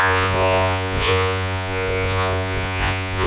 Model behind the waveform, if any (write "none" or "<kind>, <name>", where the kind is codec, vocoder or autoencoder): vocoder, Vocos